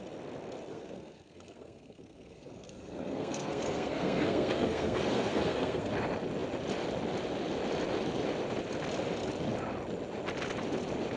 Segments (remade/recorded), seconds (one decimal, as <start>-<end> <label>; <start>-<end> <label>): 0.0-0.7 recorded; 0.7-5.9 remade; 5.9-11.2 recorded